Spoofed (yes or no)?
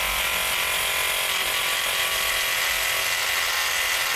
no